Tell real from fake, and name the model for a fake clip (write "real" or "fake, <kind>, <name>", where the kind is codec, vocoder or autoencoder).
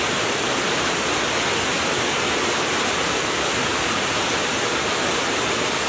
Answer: real